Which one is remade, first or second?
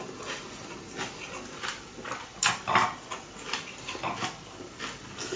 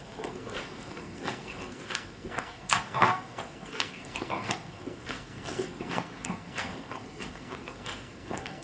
second